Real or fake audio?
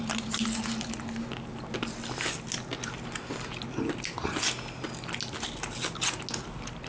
real